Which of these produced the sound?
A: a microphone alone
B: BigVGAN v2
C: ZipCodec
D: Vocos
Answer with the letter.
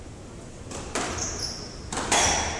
A